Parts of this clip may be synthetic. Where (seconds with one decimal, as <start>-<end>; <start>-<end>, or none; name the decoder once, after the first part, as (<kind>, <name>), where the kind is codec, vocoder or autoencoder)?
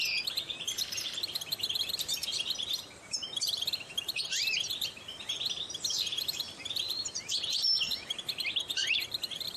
0.0-9.6 (vocoder, BigVGAN v2)